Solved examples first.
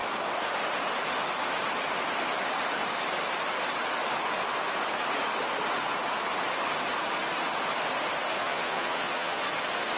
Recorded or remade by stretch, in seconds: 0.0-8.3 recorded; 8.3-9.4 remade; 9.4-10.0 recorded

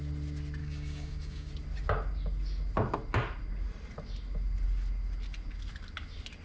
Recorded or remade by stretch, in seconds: 0.0-0.6 recorded; 0.6-1.5 remade; 1.5-6.4 recorded

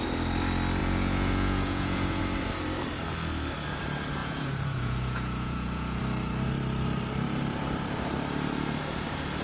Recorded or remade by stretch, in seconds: 0.0-0.8 recorded; 0.8-2.2 remade; 2.2-4.2 recorded; 4.2-6.0 remade; 6.0-9.4 recorded

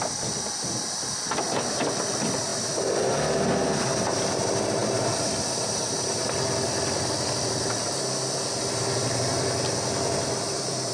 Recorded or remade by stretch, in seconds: 0.0-10.9 recorded

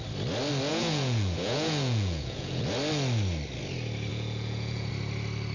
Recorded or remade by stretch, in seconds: 0.0-0.7 recorded; 0.7-2.6 remade; 2.6-4.1 recorded; 4.1-4.9 remade; 4.9-5.5 recorded